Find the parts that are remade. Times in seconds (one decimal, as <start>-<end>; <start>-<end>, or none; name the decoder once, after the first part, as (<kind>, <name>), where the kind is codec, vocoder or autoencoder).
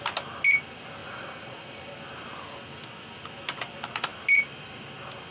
1.0-1.8 (vocoder, Vocos)